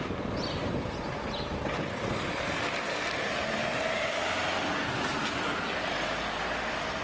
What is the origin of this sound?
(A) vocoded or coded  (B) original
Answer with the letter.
B